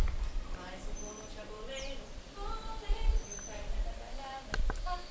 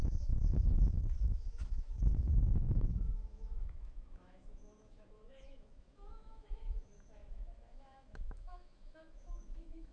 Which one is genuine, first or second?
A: first